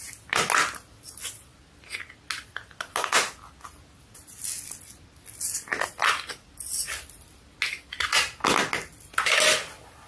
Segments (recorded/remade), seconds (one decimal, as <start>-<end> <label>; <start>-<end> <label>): 0.0-10.1 recorded